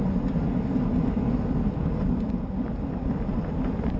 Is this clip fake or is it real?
real